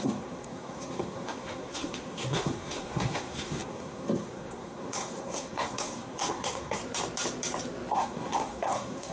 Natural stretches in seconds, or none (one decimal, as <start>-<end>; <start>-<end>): 6.8-7.9